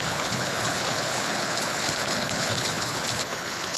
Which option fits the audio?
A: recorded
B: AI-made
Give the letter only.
B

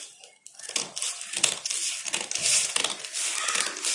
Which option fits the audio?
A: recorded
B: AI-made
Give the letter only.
A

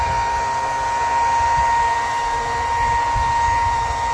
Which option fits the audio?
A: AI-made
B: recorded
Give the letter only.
B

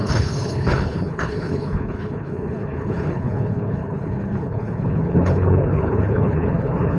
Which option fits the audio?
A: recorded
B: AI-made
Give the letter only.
B